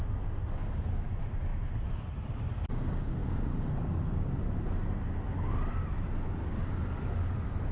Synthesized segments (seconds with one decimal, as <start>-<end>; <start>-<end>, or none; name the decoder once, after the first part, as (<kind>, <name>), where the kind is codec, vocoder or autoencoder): none